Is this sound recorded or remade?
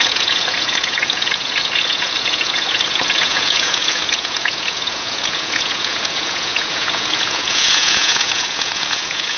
remade